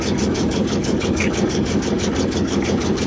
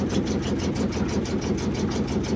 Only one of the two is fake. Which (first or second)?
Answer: first